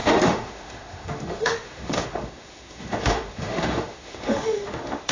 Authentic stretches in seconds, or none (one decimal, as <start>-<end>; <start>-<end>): none

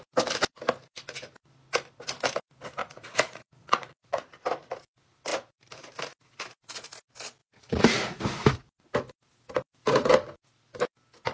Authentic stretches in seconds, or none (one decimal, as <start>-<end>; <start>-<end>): 0.0-2.8; 4.2-7.4; 8.2-11.3

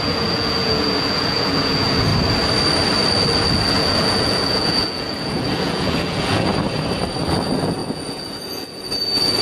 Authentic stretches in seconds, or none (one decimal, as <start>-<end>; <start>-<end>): 2.1-3.7; 6.5-7.3

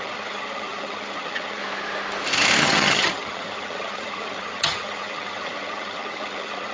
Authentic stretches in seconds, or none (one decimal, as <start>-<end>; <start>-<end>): 1.6-2.6

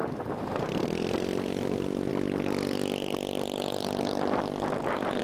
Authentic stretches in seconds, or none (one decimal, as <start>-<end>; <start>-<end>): 0.0-2.1

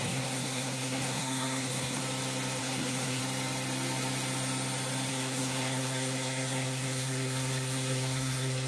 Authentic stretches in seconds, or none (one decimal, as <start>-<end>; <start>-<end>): 2.0-2.6; 3.2-5.1

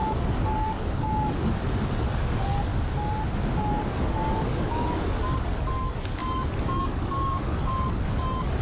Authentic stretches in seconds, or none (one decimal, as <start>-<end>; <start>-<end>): 2.7-3.7